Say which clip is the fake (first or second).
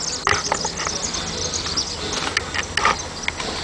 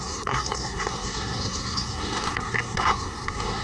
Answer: second